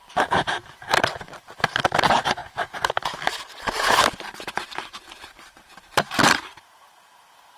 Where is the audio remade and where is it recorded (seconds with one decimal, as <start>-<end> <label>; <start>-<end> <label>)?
0.0-7.6 remade